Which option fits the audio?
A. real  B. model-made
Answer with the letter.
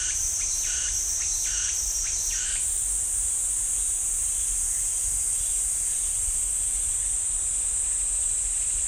B